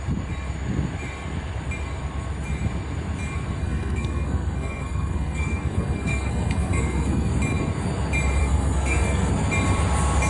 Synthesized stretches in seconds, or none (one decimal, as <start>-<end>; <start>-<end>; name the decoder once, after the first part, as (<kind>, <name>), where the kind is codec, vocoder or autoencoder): 3.6-7.3 (codec, SNAC); 8.4-9.3